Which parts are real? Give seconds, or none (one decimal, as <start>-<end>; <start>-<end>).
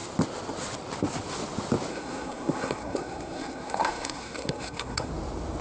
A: 0.0-1.9; 5.1-5.6